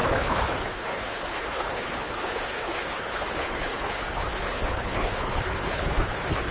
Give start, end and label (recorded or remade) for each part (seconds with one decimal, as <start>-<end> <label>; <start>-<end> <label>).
0.0-6.5 remade